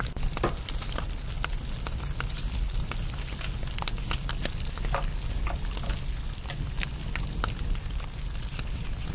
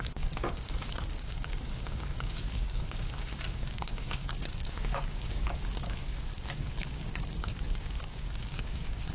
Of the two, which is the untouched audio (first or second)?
first